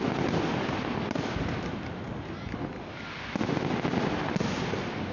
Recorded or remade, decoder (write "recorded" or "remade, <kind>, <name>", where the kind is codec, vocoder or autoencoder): recorded